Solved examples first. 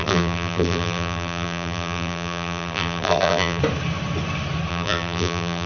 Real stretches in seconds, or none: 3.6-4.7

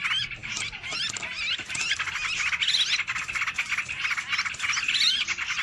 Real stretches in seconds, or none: 0.0-5.6

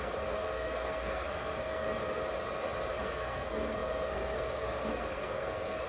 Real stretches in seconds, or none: 1.9-2.9

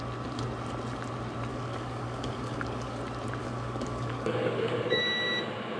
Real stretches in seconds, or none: 0.0-1.5; 3.0-3.4; 5.0-5.8

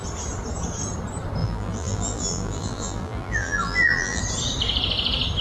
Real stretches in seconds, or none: 0.0-1.4; 4.2-5.4

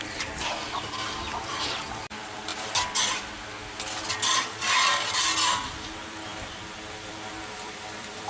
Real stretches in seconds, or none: 2.5-4.1

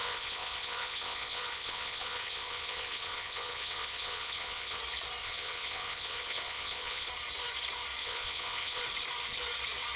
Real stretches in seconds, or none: 4.8-5.2; 7.1-8.0; 8.8-10.0

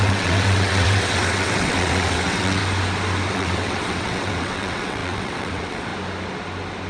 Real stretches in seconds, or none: 2.6-3.3; 5.9-6.9